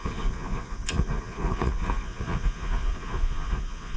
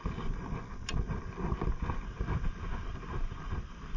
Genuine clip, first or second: second